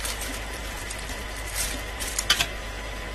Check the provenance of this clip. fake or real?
fake